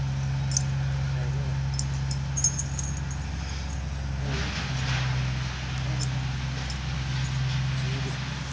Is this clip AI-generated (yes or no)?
no